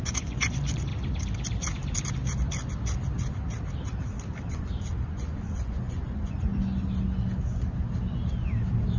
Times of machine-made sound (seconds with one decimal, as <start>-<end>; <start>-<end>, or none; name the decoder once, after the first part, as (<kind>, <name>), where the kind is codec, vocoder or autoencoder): 0.0-0.9 (vocoder, Vocos); 4.5-6.5